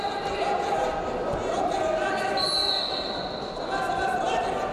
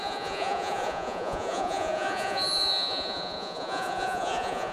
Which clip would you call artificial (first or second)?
second